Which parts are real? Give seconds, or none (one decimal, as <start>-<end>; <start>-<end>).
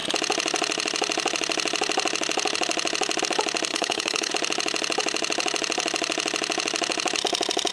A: 0.0-3.7; 4.3-7.7